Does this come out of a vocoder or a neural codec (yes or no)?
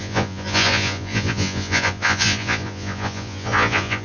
yes